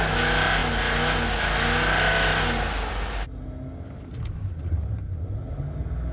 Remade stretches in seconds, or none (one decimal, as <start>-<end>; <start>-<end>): 4.1-5.5